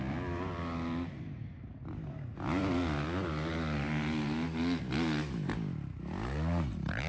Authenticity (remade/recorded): recorded